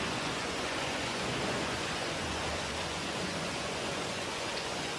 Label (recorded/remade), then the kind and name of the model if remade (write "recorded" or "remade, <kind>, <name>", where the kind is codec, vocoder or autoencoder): remade, vocoder, Vocos